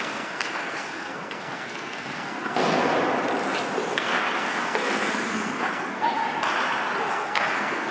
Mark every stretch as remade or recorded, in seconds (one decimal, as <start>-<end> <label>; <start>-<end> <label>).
0.0-2.9 remade; 2.9-3.9 recorded; 3.9-6.2 remade; 6.2-7.1 recorded; 7.1-7.9 remade